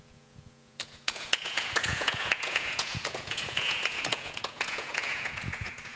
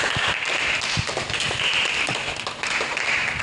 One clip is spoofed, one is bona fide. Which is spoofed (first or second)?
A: first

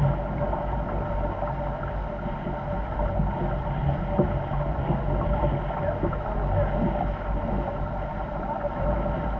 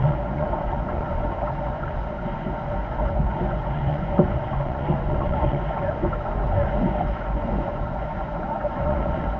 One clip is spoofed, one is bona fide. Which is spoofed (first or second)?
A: second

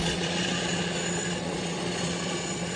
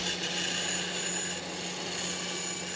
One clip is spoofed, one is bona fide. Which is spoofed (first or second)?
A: first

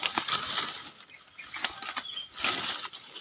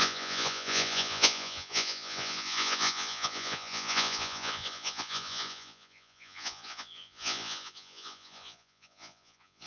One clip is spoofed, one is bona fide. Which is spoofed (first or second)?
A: second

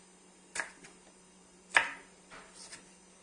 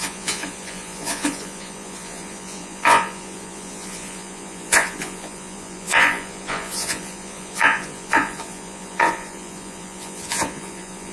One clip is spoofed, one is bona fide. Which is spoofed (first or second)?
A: second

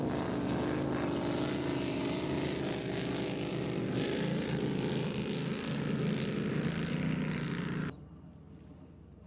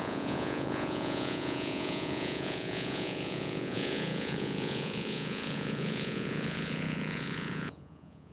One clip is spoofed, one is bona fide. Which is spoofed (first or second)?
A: second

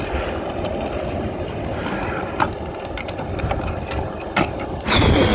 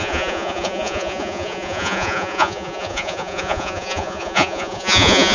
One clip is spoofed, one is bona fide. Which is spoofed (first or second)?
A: second